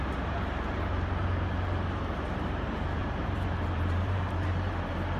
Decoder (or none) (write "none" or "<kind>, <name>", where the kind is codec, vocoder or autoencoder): vocoder, BigVGAN v2